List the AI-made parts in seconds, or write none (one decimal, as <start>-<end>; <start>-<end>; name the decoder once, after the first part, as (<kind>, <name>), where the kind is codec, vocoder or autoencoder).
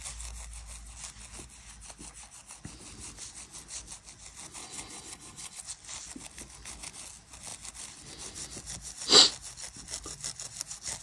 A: 4.6-5.6 (codec, HILCodec)